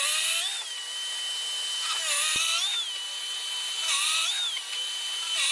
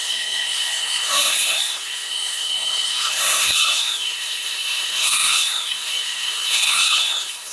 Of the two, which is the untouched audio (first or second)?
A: first